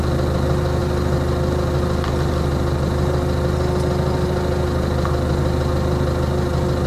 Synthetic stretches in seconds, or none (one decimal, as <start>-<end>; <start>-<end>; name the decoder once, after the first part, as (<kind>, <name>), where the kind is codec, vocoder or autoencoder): none